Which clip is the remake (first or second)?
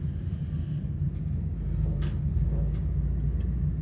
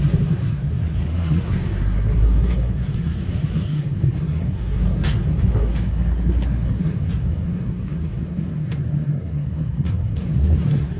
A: second